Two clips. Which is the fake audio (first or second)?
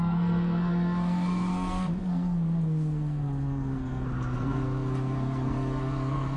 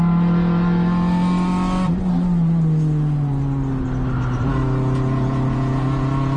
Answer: first